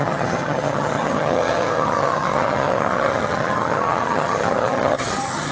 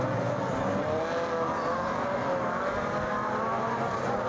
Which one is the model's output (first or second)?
first